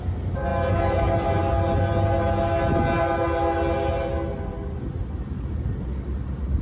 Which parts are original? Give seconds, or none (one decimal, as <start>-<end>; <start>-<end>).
0.0-6.6